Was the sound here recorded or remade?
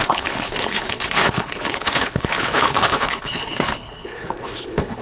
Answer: remade